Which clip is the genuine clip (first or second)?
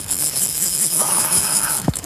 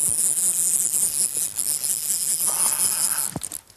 second